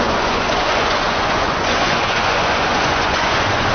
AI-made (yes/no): yes